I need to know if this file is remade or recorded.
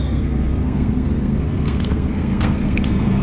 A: remade